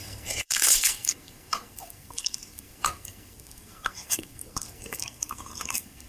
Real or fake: fake